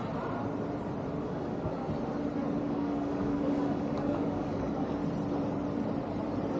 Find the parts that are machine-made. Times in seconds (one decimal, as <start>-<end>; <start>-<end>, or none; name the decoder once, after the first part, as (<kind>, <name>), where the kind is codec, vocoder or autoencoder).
1.2-1.8 (codec, DAC); 2.6-5.0

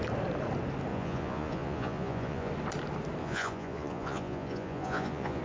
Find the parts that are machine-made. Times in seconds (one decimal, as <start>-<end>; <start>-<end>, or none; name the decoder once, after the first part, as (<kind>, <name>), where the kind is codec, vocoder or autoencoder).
0.9-2.5 (vocoder, Vocos); 3.2-5.4

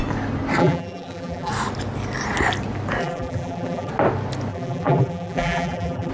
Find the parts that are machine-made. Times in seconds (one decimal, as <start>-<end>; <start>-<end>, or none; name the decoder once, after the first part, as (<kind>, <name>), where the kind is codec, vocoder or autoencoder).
0.6-1.5 (vocoder, BigVGAN v2); 3.0-3.9; 4.5-6.1

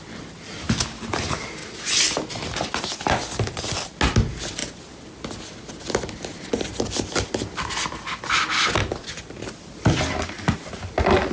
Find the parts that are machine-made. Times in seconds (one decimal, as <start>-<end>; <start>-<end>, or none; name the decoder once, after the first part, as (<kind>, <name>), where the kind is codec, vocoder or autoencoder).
none

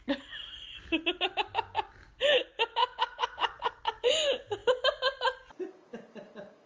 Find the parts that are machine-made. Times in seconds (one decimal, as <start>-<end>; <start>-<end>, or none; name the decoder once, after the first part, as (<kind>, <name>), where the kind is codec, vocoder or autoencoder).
2.8-4.1 (vocoder, Vocos)

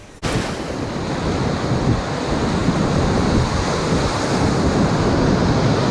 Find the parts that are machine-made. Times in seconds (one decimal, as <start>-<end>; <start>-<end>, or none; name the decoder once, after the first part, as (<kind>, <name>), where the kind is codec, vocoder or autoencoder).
none

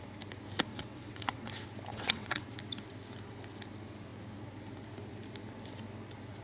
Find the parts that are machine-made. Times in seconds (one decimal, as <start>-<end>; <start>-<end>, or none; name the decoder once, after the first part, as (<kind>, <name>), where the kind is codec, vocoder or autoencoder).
0.7-1.5 (vocoder, WaveNeXt); 1.9-2.4

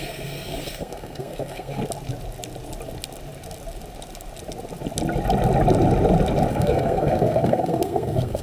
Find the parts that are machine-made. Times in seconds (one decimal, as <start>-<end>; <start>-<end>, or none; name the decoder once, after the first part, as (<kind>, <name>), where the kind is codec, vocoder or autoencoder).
0.0-1.8 (codec, SNAC); 6.5-8.4